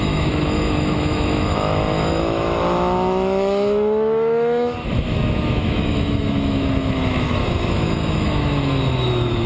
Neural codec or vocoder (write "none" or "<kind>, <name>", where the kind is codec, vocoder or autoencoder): autoencoder, DAC-VAE